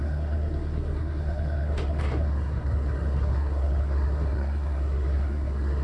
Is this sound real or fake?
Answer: fake